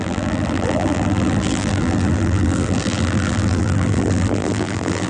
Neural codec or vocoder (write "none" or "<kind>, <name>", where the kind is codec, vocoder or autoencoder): vocoder, BigVGAN v2